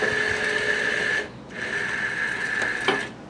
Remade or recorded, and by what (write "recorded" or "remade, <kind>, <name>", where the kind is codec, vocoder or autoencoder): recorded